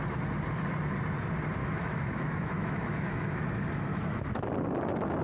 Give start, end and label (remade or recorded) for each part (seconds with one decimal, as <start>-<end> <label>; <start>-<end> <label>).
0.0-1.6 recorded; 1.6-3.4 remade; 3.4-3.9 recorded; 3.9-4.5 remade; 4.5-5.2 recorded